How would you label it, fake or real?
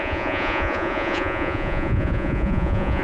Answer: fake